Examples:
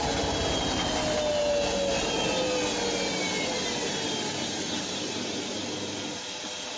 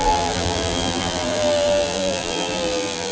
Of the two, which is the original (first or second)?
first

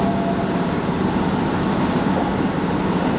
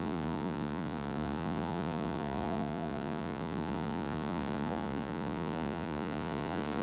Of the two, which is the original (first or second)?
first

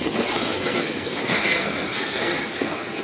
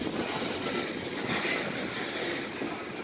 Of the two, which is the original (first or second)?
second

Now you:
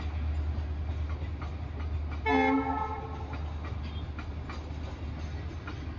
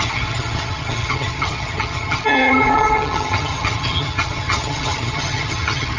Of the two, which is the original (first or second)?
first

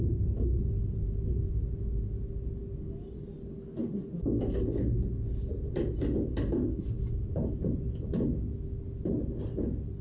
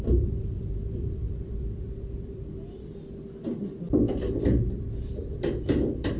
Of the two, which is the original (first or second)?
first